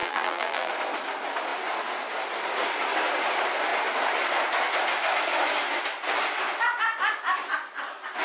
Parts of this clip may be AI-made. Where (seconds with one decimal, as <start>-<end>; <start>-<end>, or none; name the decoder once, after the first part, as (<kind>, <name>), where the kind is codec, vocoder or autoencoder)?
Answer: 0.0-0.7 (vocoder, BigVGAN v2)